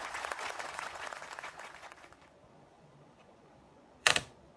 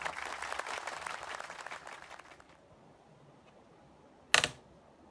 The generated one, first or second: first